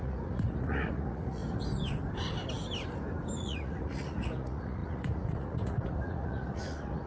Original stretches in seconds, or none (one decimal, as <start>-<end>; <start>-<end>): 1.4-3.4